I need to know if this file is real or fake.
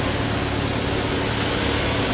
real